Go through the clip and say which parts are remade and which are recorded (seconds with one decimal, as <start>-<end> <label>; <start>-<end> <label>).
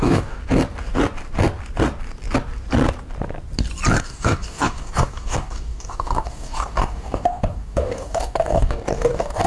0.0-0.4 remade; 0.4-4.0 recorded; 4.0-9.5 remade